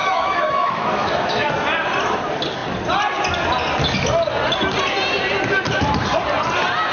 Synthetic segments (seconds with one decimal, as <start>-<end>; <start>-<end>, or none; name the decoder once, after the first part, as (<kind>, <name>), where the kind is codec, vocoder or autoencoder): 0.0-1.5 (autoencoder, DAC-VAE)